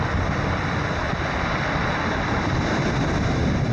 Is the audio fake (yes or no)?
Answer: no